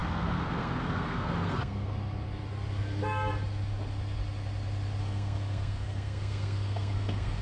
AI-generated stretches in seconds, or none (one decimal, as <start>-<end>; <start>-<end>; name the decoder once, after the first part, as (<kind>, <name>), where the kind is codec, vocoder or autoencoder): 0.0-1.9 (codec, SNAC); 5.0-7.4